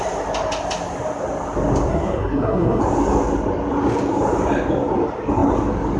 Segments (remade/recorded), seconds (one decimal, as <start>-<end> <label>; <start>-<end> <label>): 0.0-1.9 recorded; 1.9-2.8 remade; 2.8-6.0 recorded